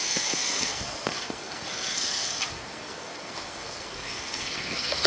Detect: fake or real fake